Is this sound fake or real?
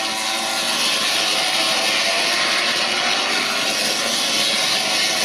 real